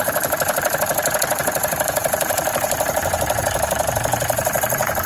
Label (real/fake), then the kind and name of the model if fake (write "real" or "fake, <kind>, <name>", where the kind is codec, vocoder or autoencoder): fake, vocoder, BigVGAN v2